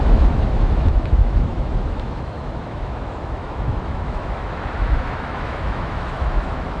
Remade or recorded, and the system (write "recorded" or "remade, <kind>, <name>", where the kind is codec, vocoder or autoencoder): remade, autoencoder, DAC-VAE